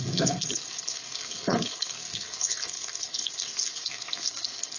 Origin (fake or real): fake